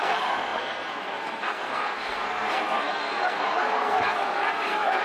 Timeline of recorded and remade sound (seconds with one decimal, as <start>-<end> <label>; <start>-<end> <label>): 0.0-5.0 remade